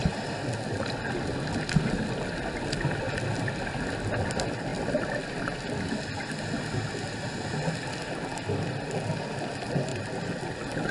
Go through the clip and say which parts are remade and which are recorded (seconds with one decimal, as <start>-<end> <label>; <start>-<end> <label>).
0.0-10.9 recorded